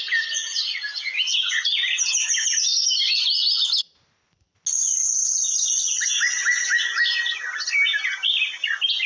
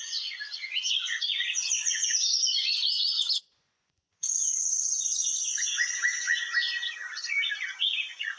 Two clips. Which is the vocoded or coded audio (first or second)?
second